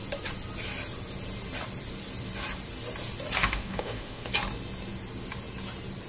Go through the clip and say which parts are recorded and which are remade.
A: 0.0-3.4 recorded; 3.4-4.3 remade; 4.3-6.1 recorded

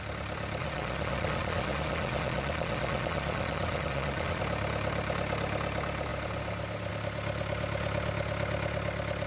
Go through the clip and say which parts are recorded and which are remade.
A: 0.0-0.6 recorded; 0.6-4.4 remade; 4.4-9.3 recorded

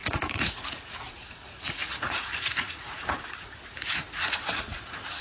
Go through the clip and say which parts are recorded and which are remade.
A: 0.0-5.2 remade

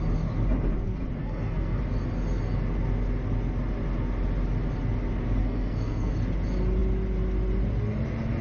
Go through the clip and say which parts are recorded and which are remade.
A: 0.0-1.2 recorded; 1.2-1.8 remade; 1.8-5.4 recorded; 5.4-6.1 remade; 6.1-8.4 recorded